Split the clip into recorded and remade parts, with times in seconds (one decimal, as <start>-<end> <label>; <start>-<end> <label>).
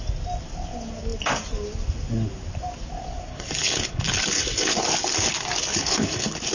0.0-3.3 recorded; 3.3-4.9 remade; 4.9-5.7 recorded; 5.7-6.5 remade